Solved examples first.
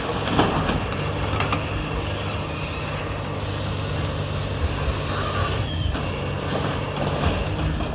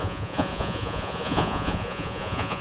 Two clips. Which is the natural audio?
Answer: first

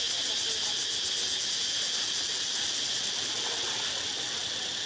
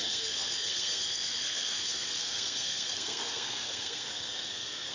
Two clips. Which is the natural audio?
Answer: first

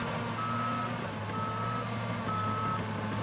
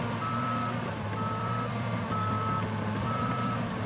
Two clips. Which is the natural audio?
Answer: first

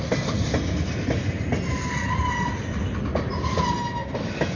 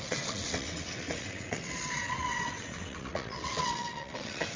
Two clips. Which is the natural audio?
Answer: first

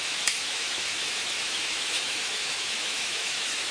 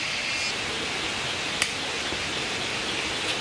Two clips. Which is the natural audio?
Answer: second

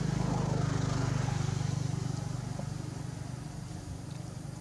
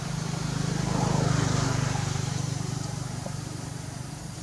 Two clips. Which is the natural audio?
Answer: first